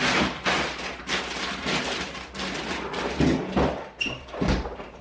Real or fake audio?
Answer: real